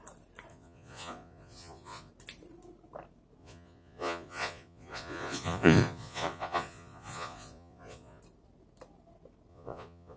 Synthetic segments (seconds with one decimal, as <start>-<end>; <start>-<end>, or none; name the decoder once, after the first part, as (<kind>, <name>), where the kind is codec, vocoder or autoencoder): 0.5-2.1 (vocoder, Vocos); 3.4-8.2; 9.5-10.2